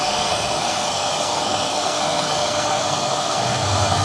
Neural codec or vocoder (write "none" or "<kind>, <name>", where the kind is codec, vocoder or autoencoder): codec, SNAC